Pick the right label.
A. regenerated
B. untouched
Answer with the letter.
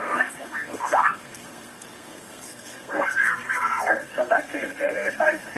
A